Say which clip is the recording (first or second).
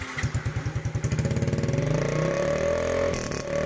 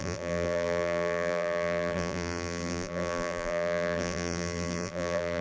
first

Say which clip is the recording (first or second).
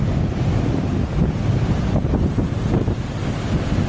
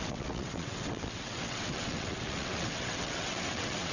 first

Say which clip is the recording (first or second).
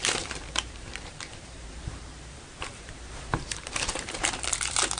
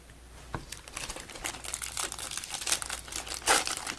second